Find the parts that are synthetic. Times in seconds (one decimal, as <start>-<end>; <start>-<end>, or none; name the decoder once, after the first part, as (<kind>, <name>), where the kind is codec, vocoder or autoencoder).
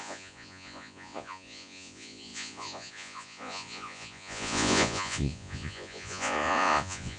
0.0-7.2 (vocoder, Vocos)